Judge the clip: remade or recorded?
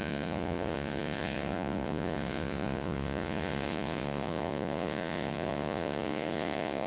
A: remade